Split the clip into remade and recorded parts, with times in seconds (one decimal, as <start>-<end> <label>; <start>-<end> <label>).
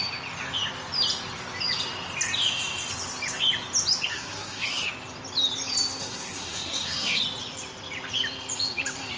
0.0-4.1 recorded; 4.1-4.9 remade; 4.9-6.0 recorded; 6.0-7.2 remade; 7.2-9.2 recorded